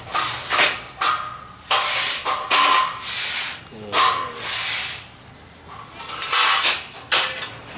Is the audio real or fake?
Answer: real